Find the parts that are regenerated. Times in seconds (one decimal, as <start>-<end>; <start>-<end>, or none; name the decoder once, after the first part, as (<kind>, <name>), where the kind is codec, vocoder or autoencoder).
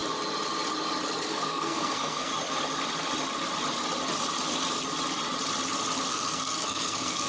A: 1.3-2.3 (codec, SNAC); 6.1-7.3